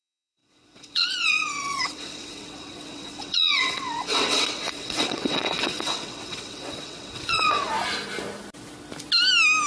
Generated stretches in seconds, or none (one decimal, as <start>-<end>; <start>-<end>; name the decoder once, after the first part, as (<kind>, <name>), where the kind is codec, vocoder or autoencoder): 0.0-7.7 (vocoder, WaveNeXt)